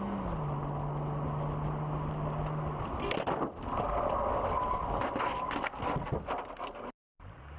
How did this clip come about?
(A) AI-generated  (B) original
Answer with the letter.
B